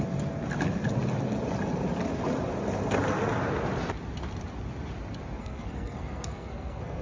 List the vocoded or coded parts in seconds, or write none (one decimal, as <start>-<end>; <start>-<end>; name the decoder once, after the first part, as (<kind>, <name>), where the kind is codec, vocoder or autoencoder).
5.4-7.0 (codec, SNAC)